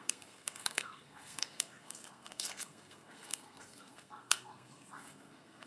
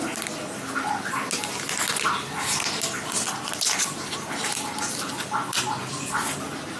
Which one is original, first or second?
second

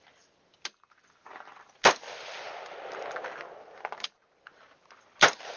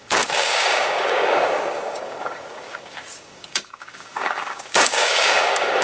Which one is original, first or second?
first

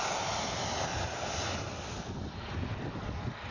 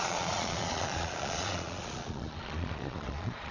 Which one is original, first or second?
first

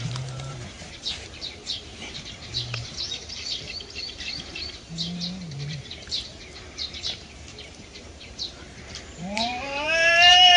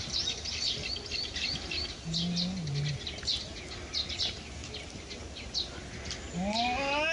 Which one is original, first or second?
second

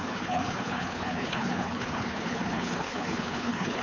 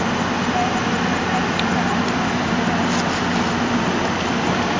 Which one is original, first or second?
second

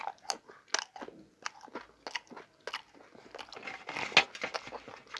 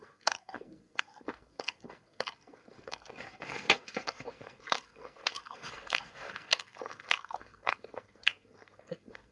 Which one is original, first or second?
first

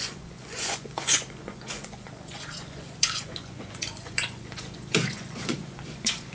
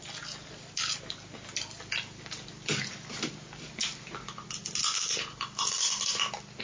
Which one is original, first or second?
second